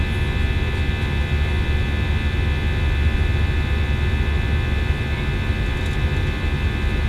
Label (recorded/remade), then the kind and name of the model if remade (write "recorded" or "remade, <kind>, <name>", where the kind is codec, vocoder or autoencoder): recorded